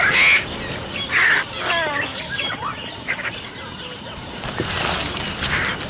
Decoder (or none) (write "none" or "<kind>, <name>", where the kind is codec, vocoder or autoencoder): none